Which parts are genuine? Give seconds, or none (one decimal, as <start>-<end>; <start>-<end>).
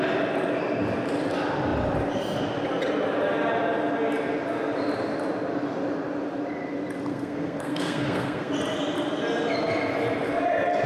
0.0-7.1; 8.5-10.9